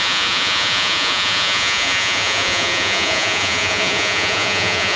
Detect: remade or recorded remade